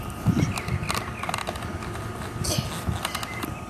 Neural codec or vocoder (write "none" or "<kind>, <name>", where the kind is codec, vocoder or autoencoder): none